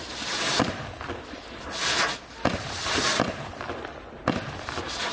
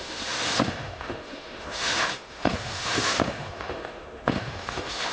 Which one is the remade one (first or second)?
second